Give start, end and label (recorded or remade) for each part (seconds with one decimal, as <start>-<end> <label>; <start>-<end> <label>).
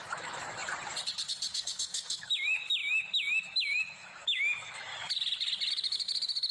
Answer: 0.0-0.6 remade; 0.6-1.5 recorded; 1.5-4.9 remade; 4.9-5.7 recorded; 5.7-6.5 remade